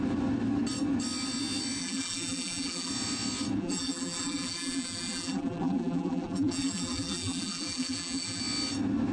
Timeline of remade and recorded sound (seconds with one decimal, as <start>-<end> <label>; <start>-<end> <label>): 0.0-1.8 recorded; 1.8-2.9 remade; 2.9-3.6 recorded; 3.6-8.4 remade; 8.4-9.1 recorded